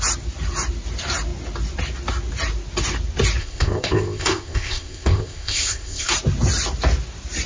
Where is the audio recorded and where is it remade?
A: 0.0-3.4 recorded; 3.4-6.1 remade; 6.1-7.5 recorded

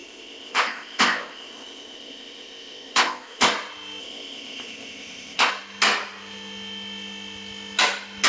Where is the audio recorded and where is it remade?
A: 0.0-3.5 remade; 3.5-4.0 recorded; 4.0-5.5 remade; 5.5-8.3 recorded